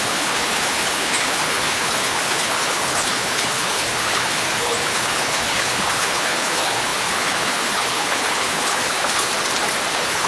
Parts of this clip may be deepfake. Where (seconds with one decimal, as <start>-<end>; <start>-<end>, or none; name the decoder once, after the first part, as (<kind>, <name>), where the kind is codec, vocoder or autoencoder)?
0.0-9.3 (codec, HILCodec); 9.9-10.3